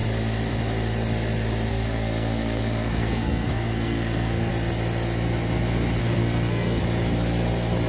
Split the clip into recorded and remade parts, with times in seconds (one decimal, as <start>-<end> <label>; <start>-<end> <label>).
0.0-1.7 recorded; 1.7-4.5 remade; 4.5-6.0 recorded; 6.0-6.8 remade; 6.8-7.9 recorded